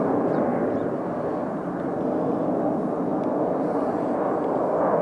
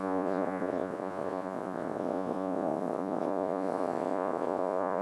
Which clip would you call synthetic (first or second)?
second